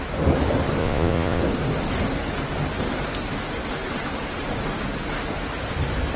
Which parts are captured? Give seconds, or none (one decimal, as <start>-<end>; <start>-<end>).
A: 0.0-0.8; 1.4-6.2